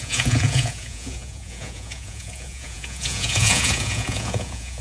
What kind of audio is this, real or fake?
fake